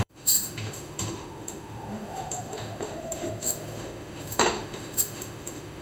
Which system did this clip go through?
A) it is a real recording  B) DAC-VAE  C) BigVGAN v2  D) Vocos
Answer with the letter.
B